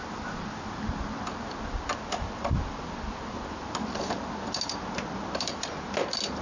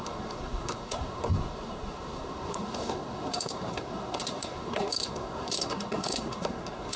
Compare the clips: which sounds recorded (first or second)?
first